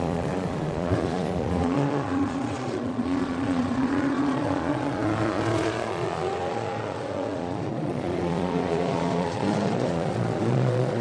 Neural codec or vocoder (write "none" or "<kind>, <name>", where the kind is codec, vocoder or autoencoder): vocoder, Vocos